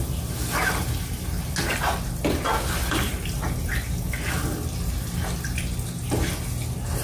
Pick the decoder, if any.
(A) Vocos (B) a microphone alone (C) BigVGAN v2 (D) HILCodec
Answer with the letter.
B